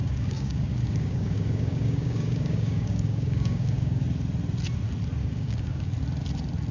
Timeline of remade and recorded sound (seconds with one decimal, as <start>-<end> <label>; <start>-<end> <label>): 0.0-4.0 remade; 4.0-5.2 recorded; 5.2-5.9 remade; 5.9-6.7 recorded

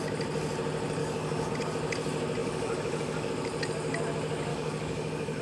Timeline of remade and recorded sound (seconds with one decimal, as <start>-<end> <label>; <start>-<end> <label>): 0.0-1.0 recorded; 1.0-1.5 remade; 1.5-2.4 recorded; 2.4-3.3 remade; 3.3-4.5 recorded; 4.5-5.4 remade

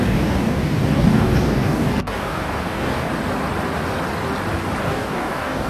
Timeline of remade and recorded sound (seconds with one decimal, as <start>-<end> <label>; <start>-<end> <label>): 0.0-3.1 remade; 3.1-4.8 recorded; 4.8-5.7 remade

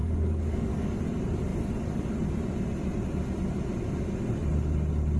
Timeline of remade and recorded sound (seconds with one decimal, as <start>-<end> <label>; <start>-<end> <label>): 0.0-0.9 remade; 0.9-5.2 recorded

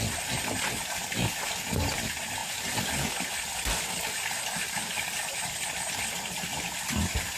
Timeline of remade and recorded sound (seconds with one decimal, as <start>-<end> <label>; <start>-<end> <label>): 0.0-7.4 recorded

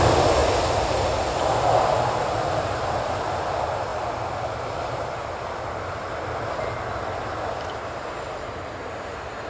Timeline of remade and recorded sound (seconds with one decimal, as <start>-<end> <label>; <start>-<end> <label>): 0.0-9.5 recorded

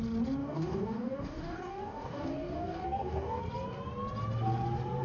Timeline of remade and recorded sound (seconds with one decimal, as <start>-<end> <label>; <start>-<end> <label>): 0.0-0.4 recorded; 0.4-3.4 remade; 3.4-5.0 recorded

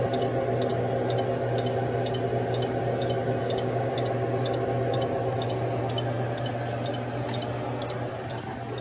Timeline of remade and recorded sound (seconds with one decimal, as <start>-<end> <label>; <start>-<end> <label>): 0.0-3.4 recorded; 3.4-3.9 remade; 3.9-8.8 recorded